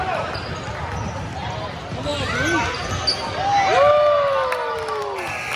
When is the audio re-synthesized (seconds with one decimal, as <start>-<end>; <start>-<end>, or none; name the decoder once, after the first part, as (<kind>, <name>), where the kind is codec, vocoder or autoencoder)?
none